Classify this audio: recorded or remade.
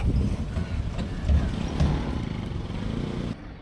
recorded